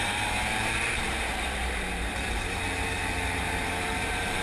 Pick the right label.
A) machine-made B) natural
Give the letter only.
A